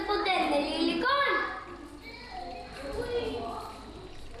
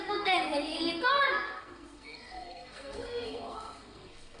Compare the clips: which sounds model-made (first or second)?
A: second